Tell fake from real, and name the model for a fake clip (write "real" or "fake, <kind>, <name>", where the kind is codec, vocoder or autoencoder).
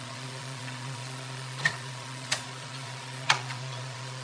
fake, vocoder, Vocos